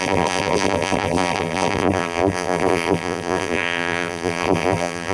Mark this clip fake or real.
fake